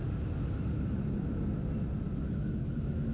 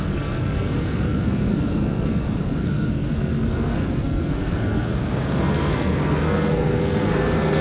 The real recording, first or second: first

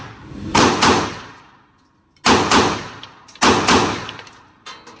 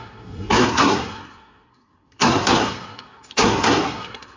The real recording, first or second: first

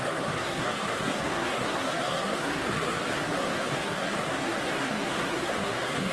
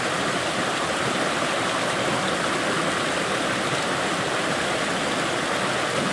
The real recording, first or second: second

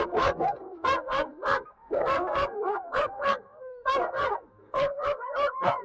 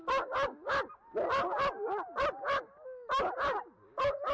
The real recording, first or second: second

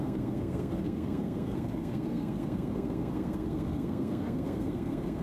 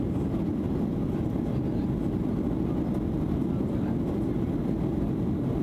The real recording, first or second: second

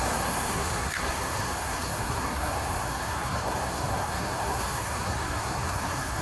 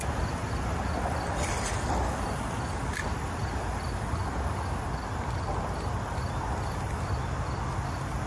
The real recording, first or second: second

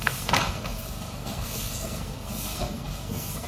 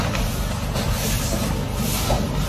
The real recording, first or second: second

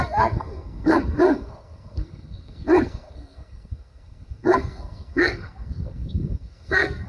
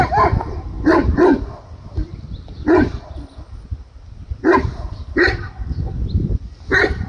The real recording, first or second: second